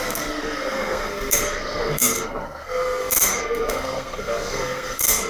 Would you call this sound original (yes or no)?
no